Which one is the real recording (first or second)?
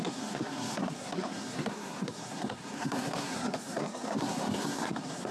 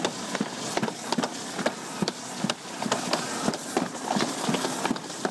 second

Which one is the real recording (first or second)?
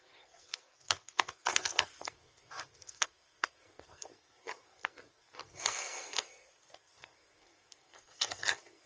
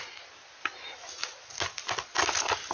second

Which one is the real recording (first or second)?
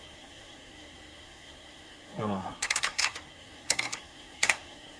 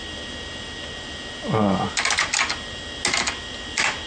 second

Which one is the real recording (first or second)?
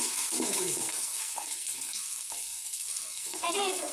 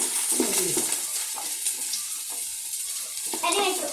second